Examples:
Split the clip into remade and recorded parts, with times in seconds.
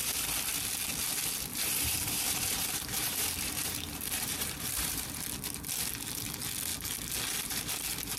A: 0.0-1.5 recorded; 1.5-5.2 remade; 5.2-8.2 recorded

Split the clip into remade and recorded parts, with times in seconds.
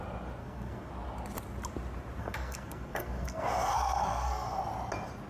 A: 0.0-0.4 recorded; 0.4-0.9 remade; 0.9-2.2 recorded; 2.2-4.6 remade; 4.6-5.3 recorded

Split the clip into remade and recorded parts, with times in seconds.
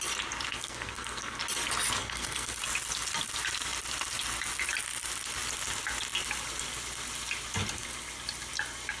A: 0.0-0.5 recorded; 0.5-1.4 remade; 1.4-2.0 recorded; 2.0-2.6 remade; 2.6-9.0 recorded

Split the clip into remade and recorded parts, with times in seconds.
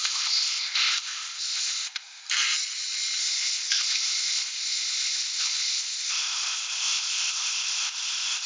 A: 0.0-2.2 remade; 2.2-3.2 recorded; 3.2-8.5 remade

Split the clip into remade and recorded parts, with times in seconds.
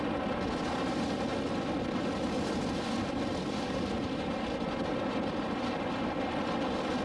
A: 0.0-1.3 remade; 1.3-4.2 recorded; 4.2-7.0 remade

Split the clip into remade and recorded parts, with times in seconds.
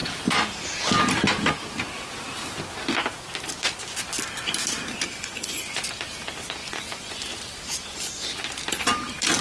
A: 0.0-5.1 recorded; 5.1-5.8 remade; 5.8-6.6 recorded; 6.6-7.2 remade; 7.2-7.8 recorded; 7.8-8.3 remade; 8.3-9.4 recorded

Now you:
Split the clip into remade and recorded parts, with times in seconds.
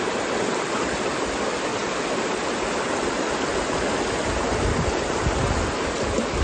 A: 0.0-6.4 recorded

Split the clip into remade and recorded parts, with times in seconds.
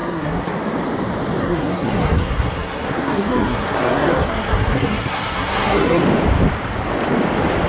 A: 0.0-0.5 remade; 0.5-1.4 recorded; 1.4-6.0 remade; 6.0-7.7 recorded